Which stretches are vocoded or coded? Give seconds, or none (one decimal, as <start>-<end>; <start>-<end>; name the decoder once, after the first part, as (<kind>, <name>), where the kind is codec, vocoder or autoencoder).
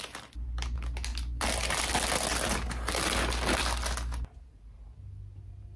none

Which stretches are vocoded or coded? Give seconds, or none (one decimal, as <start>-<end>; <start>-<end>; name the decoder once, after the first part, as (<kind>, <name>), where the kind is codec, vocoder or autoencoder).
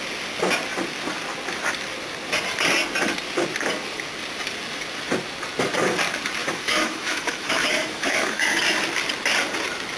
6.4-8.6 (autoencoder, DAC-VAE)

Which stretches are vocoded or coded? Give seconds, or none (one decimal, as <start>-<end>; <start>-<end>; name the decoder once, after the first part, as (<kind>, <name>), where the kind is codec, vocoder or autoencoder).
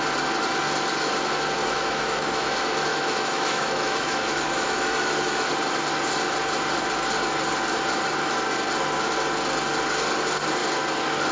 1.6-2.5 (autoencoder, DAC-VAE); 2.9-5.5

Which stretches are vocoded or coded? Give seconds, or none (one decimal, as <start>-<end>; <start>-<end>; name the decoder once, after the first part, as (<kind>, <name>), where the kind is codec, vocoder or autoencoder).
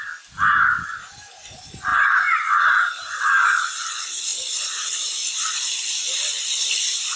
none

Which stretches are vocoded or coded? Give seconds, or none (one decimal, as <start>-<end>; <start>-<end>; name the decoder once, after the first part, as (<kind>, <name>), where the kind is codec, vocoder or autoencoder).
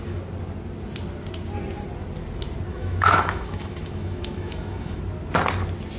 2.7-5.0 (autoencoder, DAC-VAE)